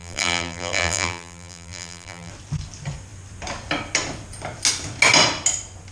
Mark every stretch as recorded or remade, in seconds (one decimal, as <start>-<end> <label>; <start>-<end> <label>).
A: 0.0-2.3 remade; 2.3-5.9 recorded